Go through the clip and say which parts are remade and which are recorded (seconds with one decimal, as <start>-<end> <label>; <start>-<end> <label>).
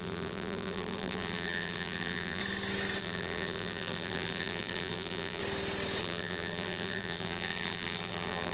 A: 0.0-2.4 remade; 2.4-3.0 recorded; 3.0-5.4 remade; 5.4-6.0 recorded; 6.0-8.5 remade